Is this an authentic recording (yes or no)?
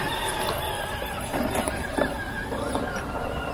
yes